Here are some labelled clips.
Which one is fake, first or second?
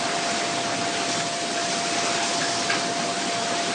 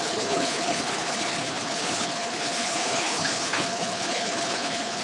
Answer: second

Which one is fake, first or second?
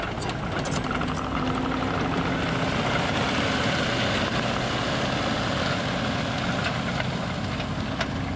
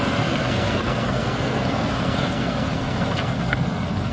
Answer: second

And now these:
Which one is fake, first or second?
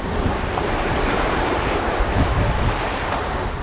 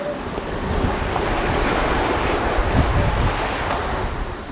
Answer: first